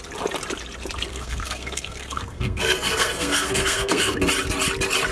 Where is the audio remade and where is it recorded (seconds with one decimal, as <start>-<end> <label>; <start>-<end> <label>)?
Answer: 0.0-1.1 recorded; 1.1-4.2 remade; 4.2-5.1 recorded